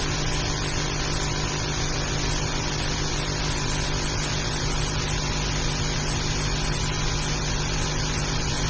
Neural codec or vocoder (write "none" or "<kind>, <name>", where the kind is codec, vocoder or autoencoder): none